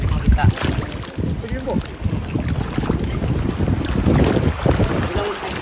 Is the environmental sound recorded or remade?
recorded